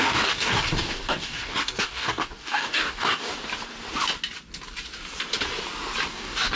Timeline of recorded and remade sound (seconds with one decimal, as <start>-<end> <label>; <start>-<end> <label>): 0.0-3.3 remade; 3.3-6.1 recorded; 6.1-6.6 remade